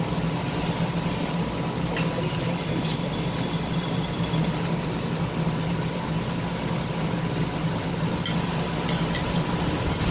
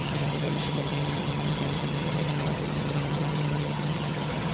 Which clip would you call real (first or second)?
first